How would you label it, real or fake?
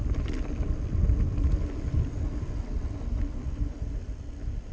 real